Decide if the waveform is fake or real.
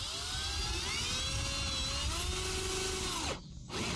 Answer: real